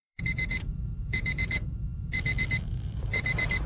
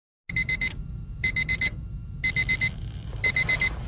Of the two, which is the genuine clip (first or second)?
second